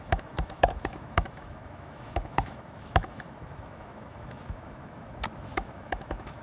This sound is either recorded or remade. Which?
remade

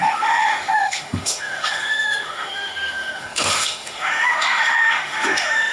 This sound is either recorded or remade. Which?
remade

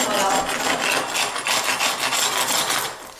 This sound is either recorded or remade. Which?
recorded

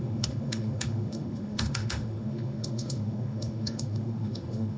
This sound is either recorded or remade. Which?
remade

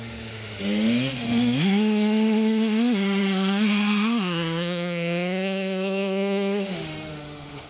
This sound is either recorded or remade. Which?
remade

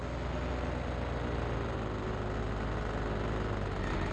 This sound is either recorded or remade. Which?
recorded